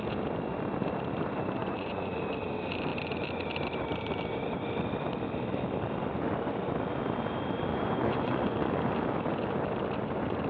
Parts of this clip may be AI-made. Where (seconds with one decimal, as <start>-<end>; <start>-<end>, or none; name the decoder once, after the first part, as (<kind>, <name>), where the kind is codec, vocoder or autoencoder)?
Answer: 1.6-2.2 (vocoder, Vocos); 7.7-8.7